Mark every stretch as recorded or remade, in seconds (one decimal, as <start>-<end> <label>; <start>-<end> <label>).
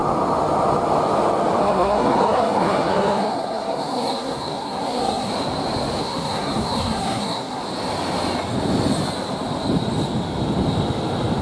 0.0-1.6 recorded; 1.6-5.3 remade; 5.3-6.0 recorded; 6.0-7.6 remade; 7.6-11.4 recorded